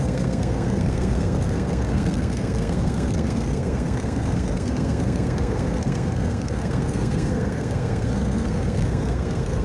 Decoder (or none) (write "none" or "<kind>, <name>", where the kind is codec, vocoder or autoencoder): codec, SNAC